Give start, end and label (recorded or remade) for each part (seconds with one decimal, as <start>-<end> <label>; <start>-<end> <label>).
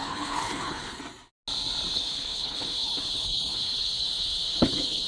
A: 0.0-1.0 remade; 1.0-1.9 recorded; 1.9-5.1 remade